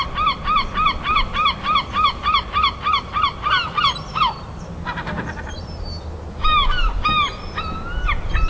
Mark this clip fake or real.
real